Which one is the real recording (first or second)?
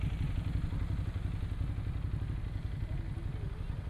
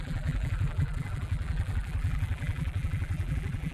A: first